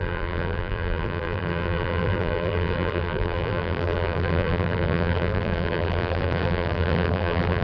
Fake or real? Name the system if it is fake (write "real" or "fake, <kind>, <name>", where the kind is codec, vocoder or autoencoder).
fake, vocoder, BigVGAN v2